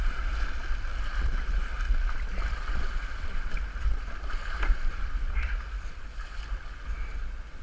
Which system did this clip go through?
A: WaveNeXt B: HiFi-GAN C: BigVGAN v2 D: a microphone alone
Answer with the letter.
D